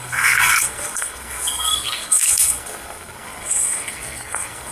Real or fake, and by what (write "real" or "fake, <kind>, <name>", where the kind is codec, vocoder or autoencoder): fake, codec, SNAC